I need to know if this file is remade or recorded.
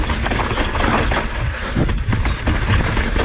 recorded